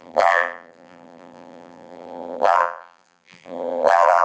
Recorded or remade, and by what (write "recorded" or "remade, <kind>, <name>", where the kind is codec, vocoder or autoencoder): remade, vocoder, BigVGAN v2